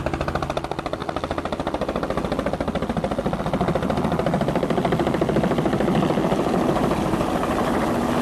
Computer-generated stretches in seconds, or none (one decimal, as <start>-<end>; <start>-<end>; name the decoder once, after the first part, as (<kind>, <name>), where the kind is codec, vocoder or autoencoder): none